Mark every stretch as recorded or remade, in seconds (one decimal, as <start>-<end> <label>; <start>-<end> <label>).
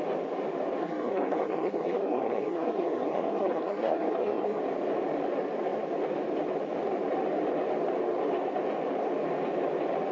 0.0-0.8 recorded; 0.8-4.6 remade; 4.6-10.1 recorded